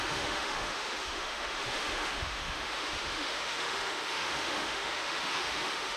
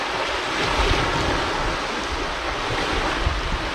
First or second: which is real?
second